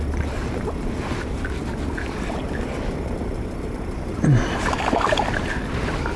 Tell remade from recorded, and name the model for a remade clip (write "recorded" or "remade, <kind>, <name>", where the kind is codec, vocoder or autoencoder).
recorded